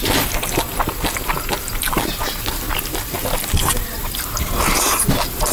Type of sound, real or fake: real